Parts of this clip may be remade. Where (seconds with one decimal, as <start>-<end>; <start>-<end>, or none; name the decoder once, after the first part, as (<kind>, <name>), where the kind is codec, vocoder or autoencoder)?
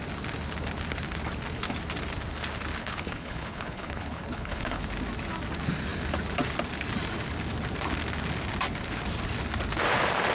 2.8-4.8 (codec, HILCodec)